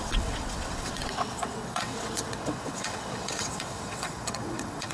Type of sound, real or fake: fake